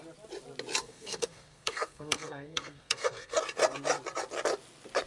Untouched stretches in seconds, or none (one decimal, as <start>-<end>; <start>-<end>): 0.0-0.8; 3.4-5.1

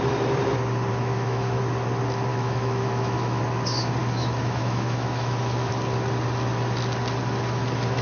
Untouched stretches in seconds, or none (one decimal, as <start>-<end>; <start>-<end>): 0.0-0.9; 1.6-2.3; 3.4-4.0; 5.7-8.0